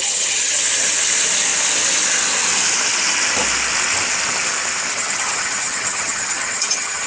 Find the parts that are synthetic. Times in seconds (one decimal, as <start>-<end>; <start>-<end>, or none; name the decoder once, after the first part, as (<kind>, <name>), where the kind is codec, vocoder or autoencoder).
0.0-0.6 (vocoder, HiFi-GAN); 4.9-7.1